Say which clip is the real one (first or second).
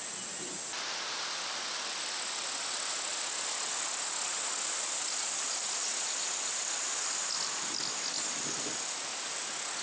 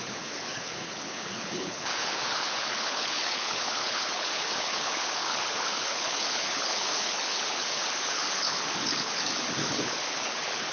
first